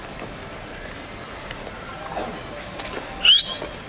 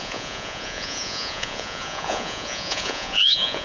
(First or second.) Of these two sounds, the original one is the first